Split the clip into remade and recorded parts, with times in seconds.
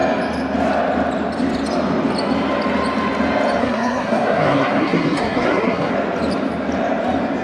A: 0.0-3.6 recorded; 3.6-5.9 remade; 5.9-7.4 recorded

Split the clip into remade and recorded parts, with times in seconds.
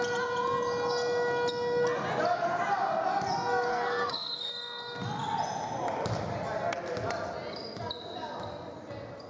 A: 0.0-3.7 recorded; 3.7-4.5 remade; 4.5-9.3 recorded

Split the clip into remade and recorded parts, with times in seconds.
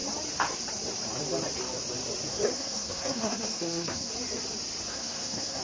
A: 0.0-2.3 recorded; 2.3-4.1 remade; 4.1-4.9 recorded; 4.9-5.6 remade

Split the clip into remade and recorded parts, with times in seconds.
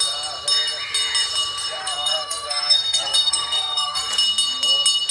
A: 0.0-1.8 recorded; 1.8-4.1 remade; 4.1-5.1 recorded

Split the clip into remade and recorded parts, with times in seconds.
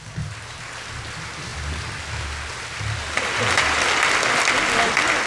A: 0.0-5.3 recorded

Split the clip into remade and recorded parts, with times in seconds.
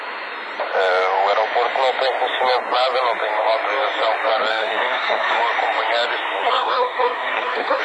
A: 0.0-4.5 recorded; 4.5-5.4 remade; 5.4-6.4 recorded; 6.4-7.8 remade